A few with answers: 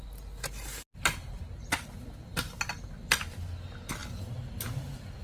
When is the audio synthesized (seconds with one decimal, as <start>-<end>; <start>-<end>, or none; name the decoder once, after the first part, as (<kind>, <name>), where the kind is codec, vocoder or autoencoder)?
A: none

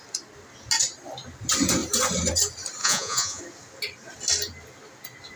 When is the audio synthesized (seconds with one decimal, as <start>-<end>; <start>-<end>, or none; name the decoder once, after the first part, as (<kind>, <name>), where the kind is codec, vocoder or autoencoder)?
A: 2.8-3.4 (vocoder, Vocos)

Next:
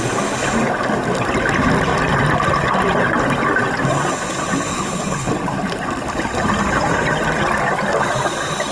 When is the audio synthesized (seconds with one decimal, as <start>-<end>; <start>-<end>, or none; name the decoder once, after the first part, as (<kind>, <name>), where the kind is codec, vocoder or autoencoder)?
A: 4.7-5.3 (codec, HILCodec)